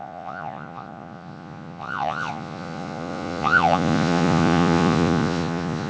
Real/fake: fake